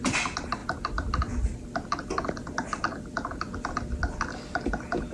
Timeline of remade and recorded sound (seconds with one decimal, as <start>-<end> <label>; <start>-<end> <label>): 0.0-5.1 recorded